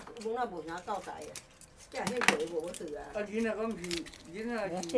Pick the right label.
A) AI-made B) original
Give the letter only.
B